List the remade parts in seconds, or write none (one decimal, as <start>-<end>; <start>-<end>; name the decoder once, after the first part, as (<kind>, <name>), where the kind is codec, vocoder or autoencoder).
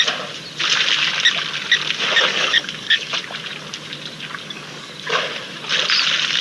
2.3-3.1 (codec, DAC); 4.4-4.9